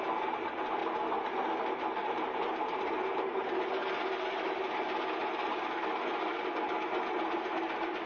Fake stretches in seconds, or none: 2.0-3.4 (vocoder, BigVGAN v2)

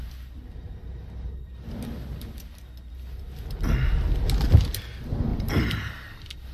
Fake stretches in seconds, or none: 5.3-5.9 (vocoder, BigVGAN v2)

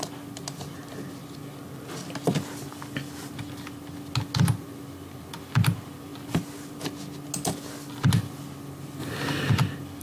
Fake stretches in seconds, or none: none

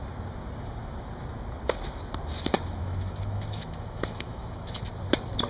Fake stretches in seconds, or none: 2.8-4.8 (autoencoder, DAC-VAE)

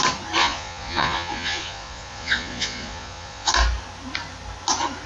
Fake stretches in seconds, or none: 0.4-3.5 (vocoder, Vocos)

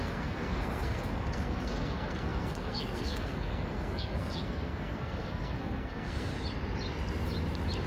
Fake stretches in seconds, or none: 0.0-6.3 (codec, SNAC)

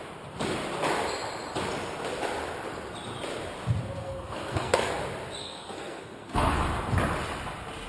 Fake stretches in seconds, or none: 4.0-5.0 (codec, SNAC); 5.4-6.6

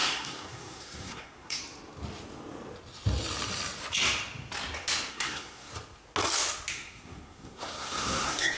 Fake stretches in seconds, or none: 0.0-1.6 (codec, SNAC); 5.1-5.7; 6.7-8.6